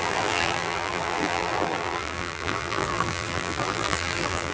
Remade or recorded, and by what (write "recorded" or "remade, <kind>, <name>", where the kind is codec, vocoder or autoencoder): remade, vocoder, BigVGAN v2